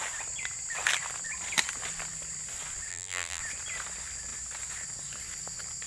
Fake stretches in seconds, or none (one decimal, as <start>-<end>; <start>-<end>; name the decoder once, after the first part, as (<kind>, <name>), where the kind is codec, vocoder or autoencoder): 2.9-3.4 (vocoder, BigVGAN v2)